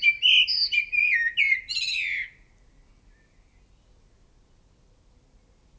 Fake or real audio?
real